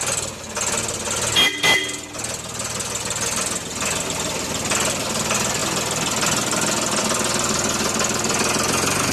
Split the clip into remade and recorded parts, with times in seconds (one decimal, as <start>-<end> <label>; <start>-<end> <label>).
0.0-9.1 recorded